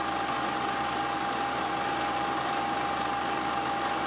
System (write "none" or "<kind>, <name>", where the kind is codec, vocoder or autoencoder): none